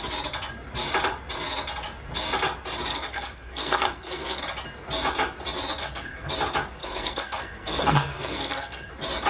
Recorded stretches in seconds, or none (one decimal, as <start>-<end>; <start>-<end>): 0.0-2.9; 4.4-5.8; 6.3-6.8; 8.9-9.3